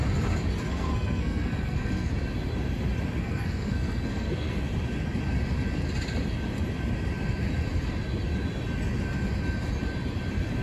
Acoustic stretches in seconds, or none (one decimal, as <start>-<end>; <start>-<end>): 0.0-0.7; 2.1-3.2; 4.6-10.6